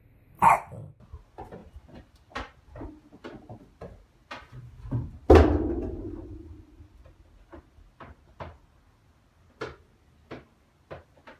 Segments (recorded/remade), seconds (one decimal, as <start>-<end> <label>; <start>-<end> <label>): 0.0-11.4 recorded